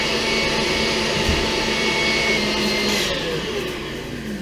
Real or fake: real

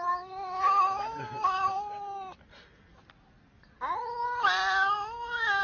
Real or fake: real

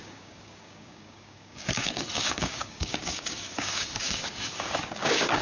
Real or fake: fake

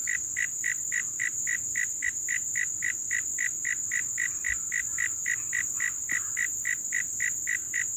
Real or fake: real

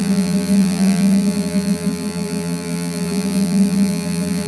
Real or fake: fake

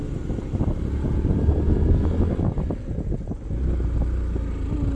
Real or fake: real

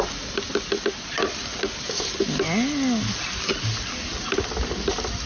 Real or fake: real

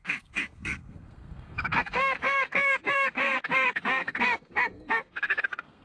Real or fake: fake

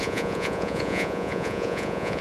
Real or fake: fake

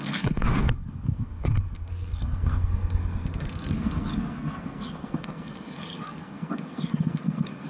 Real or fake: fake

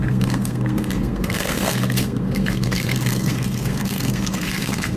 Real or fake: fake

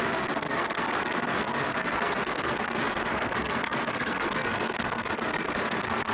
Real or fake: fake